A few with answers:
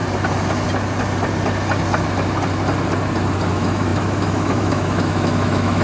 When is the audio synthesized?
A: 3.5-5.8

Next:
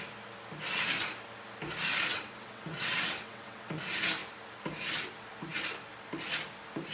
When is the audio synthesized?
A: 2.1-3.8